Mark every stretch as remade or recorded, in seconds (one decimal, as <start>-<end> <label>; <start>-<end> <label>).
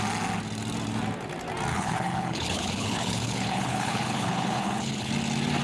0.0-1.7 recorded; 1.7-5.1 remade; 5.1-5.6 recorded